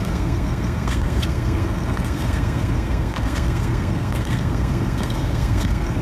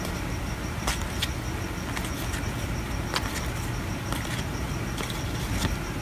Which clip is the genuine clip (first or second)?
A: second